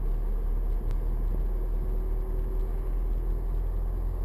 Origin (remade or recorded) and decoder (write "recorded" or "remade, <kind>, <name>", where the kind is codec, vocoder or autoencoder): recorded